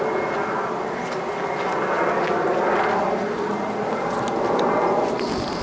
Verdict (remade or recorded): recorded